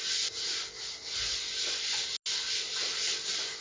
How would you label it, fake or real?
real